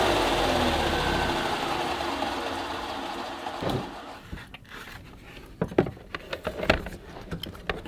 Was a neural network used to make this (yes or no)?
no